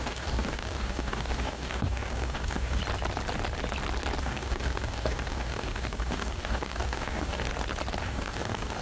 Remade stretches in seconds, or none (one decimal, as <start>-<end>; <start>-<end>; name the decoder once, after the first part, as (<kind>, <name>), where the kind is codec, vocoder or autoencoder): 0.0-2.8 (codec, DAC); 4.2-7.5; 8.0-8.8